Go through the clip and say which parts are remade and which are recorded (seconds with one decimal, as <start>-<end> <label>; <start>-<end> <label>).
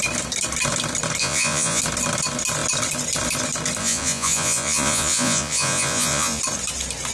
0.0-1.2 recorded; 1.2-1.8 remade; 1.8-3.8 recorded; 3.8-6.4 remade; 6.4-7.1 recorded